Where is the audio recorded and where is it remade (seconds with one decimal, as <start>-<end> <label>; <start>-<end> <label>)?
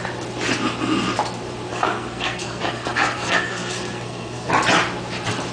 0.0-1.7 recorded; 1.7-4.5 remade; 4.5-5.5 recorded